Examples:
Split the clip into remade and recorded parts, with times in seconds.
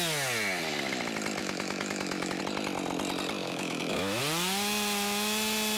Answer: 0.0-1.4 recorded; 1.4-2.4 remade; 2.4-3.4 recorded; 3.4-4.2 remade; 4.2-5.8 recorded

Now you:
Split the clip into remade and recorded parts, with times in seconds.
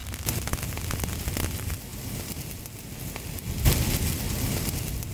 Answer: 0.0-5.1 recorded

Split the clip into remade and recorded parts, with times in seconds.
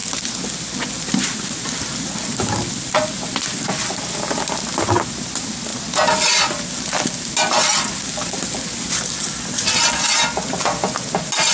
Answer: 0.0-11.5 recorded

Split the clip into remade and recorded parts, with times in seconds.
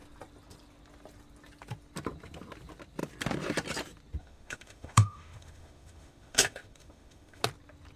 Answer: 0.0-4.2 recorded; 4.2-7.4 remade; 7.4-8.0 recorded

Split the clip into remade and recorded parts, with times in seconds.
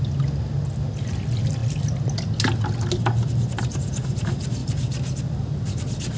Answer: 0.0-6.2 recorded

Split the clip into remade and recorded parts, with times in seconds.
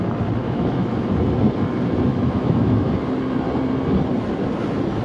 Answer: 0.0-0.4 recorded; 0.4-1.0 remade; 1.0-2.1 recorded; 2.1-2.9 remade; 2.9-5.0 recorded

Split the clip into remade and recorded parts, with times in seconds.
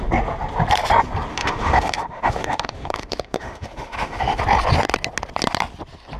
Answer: 0.0-1.3 recorded; 1.3-4.4 remade; 4.4-6.2 recorded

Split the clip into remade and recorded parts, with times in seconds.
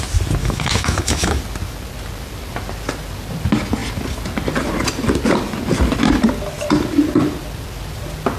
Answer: 0.0-0.4 recorded; 0.4-1.4 remade; 1.4-8.4 recorded